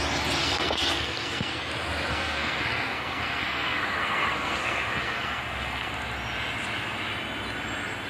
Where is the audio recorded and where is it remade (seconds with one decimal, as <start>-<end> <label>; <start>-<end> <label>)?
0.0-0.4 recorded; 0.4-1.6 remade; 1.6-2.1 recorded; 2.1-5.9 remade; 5.9-8.1 recorded